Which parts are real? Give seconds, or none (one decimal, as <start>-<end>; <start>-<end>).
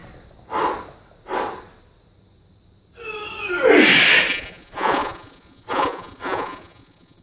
0.0-4.3